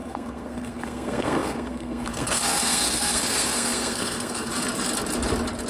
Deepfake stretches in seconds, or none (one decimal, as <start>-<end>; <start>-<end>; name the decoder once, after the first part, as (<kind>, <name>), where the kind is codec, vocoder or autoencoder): 0.0-4.5 (codec, SNAC)